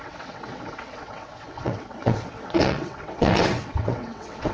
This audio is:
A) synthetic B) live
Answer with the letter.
A